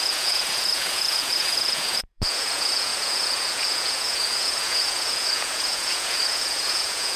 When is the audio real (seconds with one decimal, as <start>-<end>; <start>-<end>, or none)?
none